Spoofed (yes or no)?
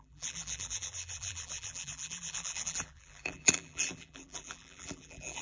yes